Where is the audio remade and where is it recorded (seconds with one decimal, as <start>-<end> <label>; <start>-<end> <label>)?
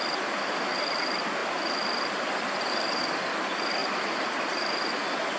0.0-5.4 recorded